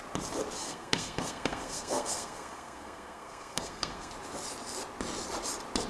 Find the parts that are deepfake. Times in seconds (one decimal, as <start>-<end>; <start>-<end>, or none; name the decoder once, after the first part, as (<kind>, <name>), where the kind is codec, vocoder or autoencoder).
0.6-4.1 (codec, SNAC)